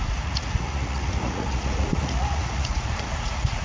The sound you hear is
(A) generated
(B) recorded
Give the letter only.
A